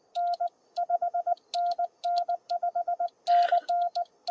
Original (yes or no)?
yes